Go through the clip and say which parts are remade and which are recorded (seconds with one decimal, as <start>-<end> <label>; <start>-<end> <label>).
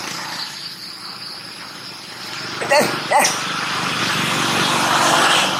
0.0-5.6 recorded